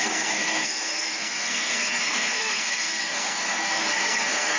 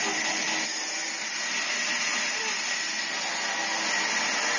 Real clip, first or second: second